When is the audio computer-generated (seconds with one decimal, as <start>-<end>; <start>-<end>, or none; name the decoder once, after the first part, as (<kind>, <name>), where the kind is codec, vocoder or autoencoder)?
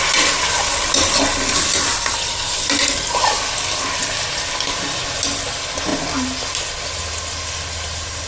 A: none